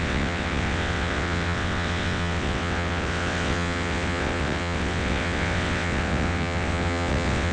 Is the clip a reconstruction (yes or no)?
yes